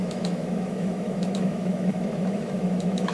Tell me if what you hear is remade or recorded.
remade